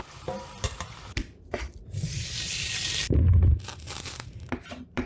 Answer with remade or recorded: remade